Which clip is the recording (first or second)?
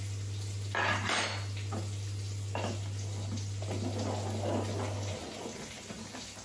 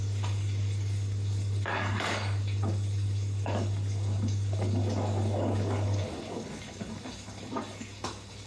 first